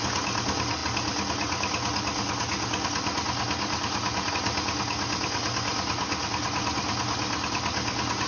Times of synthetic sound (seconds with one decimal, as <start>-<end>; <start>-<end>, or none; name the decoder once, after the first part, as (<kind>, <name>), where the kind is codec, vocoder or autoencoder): none